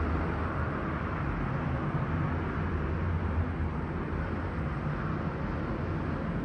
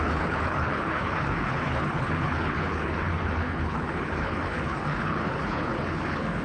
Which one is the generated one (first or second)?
second